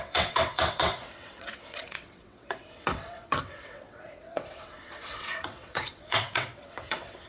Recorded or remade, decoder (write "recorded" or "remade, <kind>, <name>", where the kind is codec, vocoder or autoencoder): remade, vocoder, WaveNeXt